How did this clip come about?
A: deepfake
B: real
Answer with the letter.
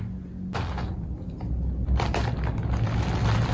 B